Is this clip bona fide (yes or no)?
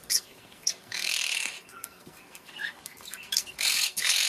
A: no